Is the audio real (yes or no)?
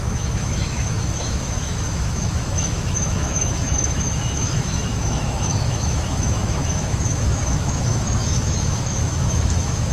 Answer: no